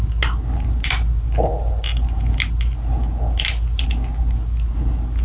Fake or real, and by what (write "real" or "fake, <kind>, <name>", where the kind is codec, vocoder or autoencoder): real